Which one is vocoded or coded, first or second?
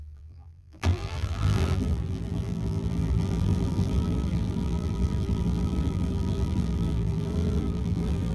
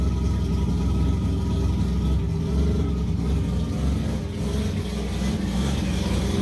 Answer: first